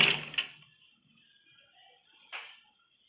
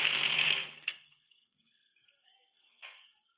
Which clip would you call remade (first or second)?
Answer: second